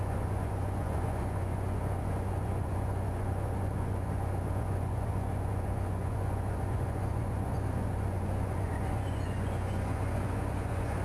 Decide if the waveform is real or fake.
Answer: fake